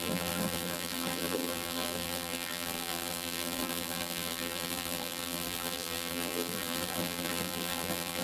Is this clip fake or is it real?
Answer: fake